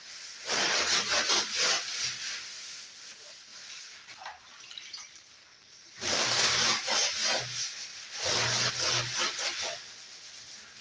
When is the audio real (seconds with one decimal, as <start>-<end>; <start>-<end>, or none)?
0.0-3.5; 6.4-7.9; 8.7-9.7; 10.3-10.8